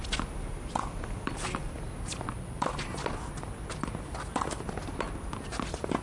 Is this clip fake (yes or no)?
no